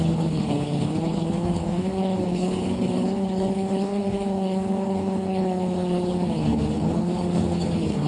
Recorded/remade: remade